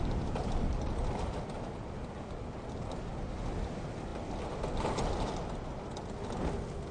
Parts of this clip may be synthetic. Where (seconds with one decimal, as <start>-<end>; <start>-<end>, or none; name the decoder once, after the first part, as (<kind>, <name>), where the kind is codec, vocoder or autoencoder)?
none